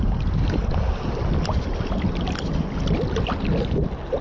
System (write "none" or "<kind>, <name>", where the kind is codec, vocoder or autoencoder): none